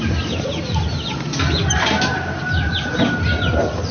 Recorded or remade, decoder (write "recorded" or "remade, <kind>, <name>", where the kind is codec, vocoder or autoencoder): recorded